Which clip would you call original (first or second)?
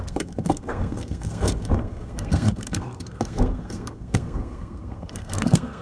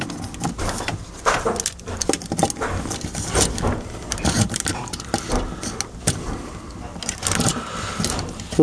second